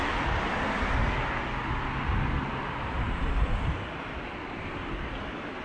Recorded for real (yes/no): yes